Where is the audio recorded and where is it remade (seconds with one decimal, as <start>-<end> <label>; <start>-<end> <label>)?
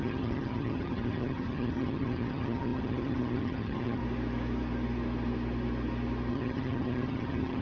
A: 0.0-4.0 remade; 4.0-6.3 recorded; 6.3-7.6 remade